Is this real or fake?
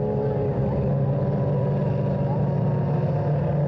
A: real